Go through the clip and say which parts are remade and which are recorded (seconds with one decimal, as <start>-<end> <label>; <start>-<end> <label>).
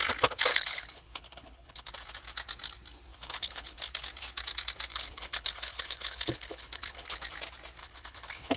0.0-0.5 recorded; 0.5-1.9 remade; 1.9-3.1 recorded; 3.1-3.9 remade; 3.9-4.9 recorded; 4.9-7.2 remade; 7.2-7.8 recorded; 7.8-8.6 remade